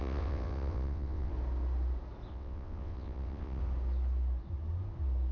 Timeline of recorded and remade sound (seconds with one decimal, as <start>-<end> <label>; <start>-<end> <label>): 0.0-1.3 remade; 1.3-2.3 recorded; 2.3-3.6 remade; 3.6-5.3 recorded